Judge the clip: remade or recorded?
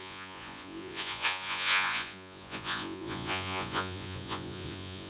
remade